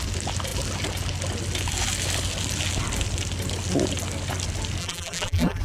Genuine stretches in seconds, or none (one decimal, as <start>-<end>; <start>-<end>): 0.0-4.8